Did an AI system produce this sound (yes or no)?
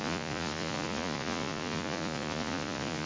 yes